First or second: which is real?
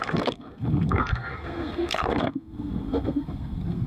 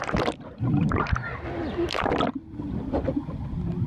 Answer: second